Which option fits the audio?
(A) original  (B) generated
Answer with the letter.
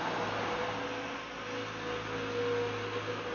A